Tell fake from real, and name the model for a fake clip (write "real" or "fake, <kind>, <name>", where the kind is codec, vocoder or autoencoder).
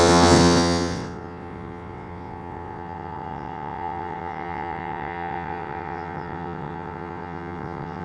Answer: fake, vocoder, WaveNeXt